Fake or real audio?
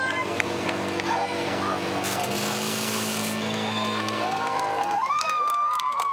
fake